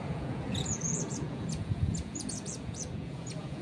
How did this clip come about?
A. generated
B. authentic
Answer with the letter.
A